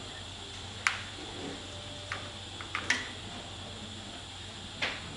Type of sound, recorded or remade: recorded